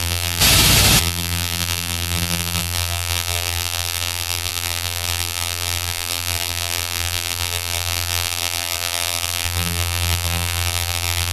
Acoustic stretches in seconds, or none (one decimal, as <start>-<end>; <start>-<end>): 0.4-1.0